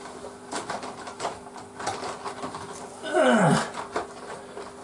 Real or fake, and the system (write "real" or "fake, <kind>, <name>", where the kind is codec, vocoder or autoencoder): real